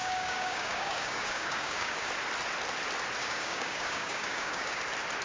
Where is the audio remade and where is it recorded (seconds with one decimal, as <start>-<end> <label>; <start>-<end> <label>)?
0.0-2.1 remade; 2.1-3.2 recorded; 3.2-4.8 remade; 4.8-5.2 recorded